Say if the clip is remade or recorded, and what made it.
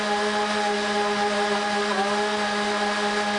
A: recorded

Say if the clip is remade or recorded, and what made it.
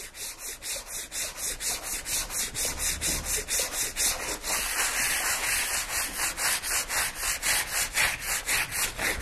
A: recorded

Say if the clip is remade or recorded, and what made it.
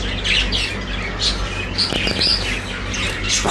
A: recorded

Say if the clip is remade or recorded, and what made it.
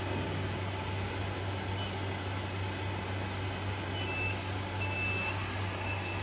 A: recorded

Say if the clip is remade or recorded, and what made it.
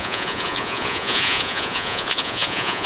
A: remade, vocoder, Vocos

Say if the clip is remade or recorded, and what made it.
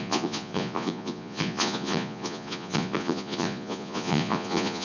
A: remade, vocoder, Vocos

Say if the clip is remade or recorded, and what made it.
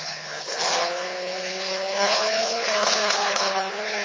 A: remade, codec, HILCodec